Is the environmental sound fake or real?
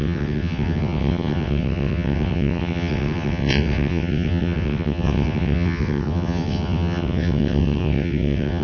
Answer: fake